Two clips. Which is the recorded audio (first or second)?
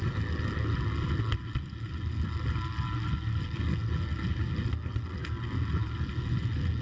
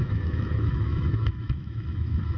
first